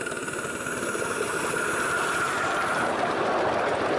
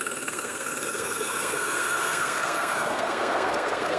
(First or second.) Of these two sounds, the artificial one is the second